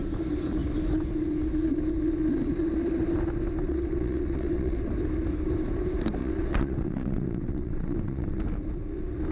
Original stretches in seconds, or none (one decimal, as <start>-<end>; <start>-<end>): 0.0-3.6; 4.9-6.2; 8.4-9.3